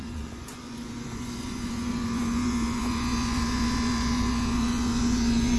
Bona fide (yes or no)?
no